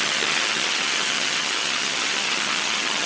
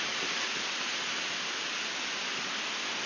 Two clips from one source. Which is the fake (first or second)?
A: first